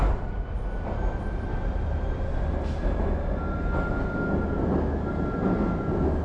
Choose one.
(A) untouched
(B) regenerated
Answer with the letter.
A